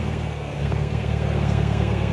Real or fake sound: fake